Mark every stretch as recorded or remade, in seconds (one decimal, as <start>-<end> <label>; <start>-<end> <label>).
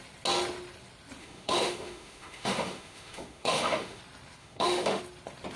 0.0-1.2 recorded; 1.2-4.0 remade; 4.0-4.4 recorded; 4.4-5.0 remade; 5.0-5.6 recorded